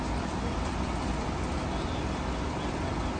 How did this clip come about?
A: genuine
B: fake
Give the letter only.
A